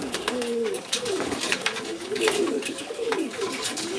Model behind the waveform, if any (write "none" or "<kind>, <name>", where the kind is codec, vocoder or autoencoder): codec, DAC